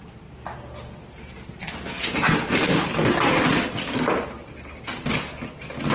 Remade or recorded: recorded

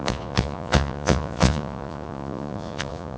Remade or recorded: remade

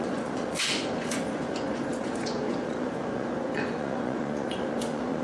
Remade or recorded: remade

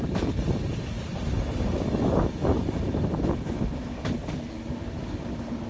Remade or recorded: recorded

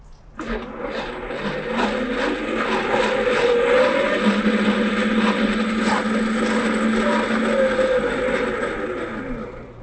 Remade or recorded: recorded